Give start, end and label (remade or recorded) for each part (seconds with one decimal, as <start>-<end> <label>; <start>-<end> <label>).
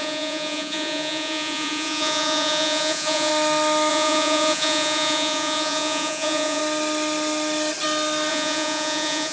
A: 0.0-3.3 remade; 3.3-3.9 recorded; 3.9-6.6 remade; 6.6-8.3 recorded; 8.3-9.3 remade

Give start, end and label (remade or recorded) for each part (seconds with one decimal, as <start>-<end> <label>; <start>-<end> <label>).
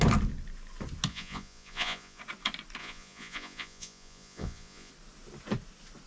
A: 0.0-1.1 recorded; 1.1-2.2 remade; 2.2-2.8 recorded; 2.8-4.9 remade; 4.9-6.1 recorded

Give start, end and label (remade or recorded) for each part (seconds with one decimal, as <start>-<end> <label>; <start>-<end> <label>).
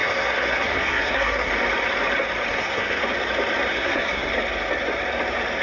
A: 0.0-1.5 remade; 1.5-2.5 recorded; 2.5-3.0 remade; 3.0-3.7 recorded; 3.7-4.3 remade; 4.3-5.6 recorded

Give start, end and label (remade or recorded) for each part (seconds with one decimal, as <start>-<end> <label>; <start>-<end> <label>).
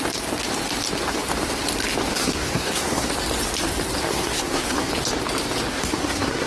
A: 0.0-2.1 recorded; 2.1-3.1 remade; 3.1-4.1 recorded; 4.1-4.9 remade; 4.9-5.7 recorded; 5.7-6.5 remade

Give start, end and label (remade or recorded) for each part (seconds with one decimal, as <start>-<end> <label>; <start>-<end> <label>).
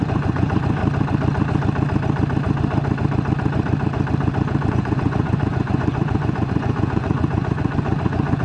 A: 0.0-0.8 remade; 0.8-4.7 recorded; 4.7-8.4 remade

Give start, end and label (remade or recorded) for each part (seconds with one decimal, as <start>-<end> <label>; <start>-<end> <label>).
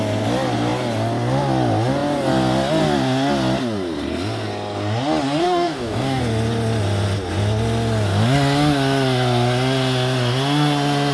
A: 0.0-5.4 recorded; 5.4-6.2 remade; 6.2-11.1 recorded